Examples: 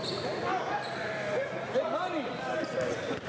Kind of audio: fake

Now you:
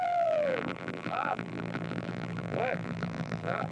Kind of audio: fake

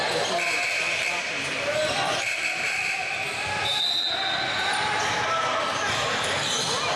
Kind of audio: real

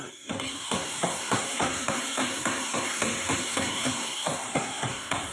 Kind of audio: fake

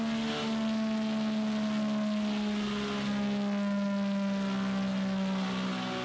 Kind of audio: real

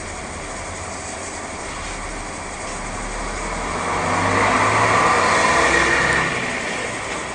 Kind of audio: real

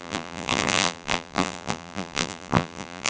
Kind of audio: fake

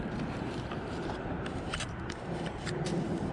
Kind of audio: fake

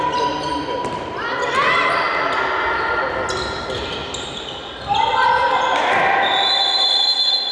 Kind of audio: real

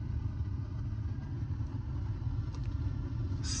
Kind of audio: real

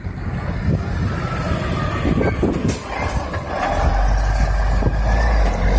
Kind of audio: real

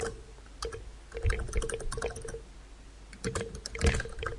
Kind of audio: real